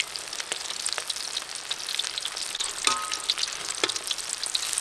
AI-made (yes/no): no